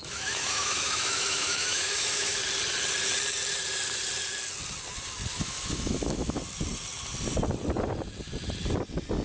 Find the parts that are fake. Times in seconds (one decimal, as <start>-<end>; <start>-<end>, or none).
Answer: 0.0-2.4; 5.3-6.4